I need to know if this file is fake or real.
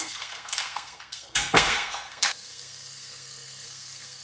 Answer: fake